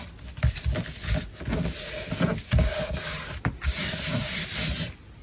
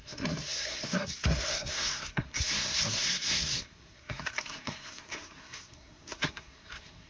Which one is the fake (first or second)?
second